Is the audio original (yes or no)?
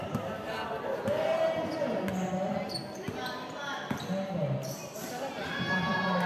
yes